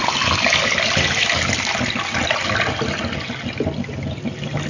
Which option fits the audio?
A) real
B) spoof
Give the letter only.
A